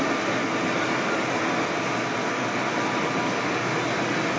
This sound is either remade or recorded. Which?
recorded